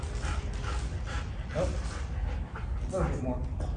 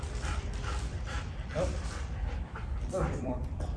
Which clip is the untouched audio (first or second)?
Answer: first